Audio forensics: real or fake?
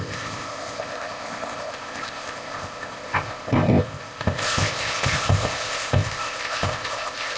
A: fake